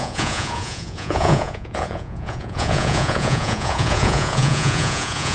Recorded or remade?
remade